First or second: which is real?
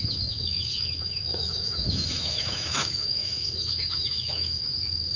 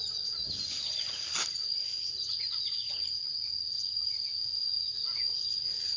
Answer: second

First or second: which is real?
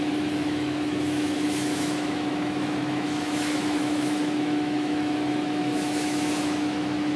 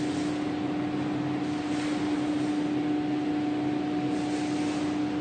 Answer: second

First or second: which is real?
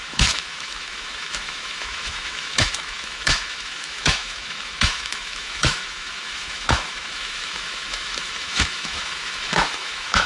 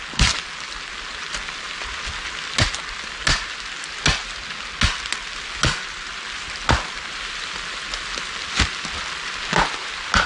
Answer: second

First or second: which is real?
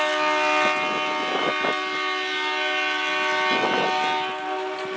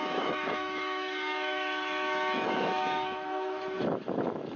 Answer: first